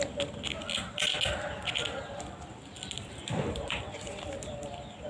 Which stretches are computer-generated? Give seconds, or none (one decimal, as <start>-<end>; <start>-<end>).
none